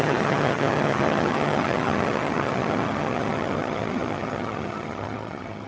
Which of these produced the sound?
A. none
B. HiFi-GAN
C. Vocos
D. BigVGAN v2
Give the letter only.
B